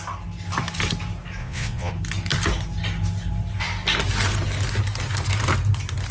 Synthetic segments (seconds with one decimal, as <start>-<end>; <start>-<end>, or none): 1.4-1.9